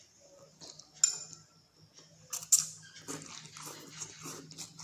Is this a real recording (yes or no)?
yes